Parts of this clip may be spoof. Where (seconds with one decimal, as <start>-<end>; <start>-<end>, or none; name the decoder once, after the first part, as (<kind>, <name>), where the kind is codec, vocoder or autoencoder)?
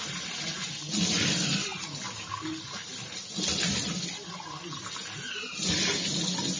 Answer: none